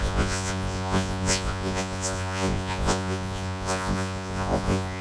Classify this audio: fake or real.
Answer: fake